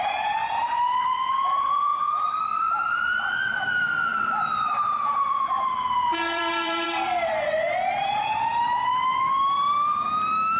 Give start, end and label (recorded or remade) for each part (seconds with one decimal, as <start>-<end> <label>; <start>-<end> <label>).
0.0-8.5 remade; 8.5-9.7 recorded; 9.7-10.6 remade